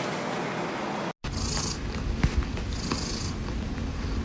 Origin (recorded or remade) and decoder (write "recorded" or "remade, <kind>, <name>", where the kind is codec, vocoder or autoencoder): recorded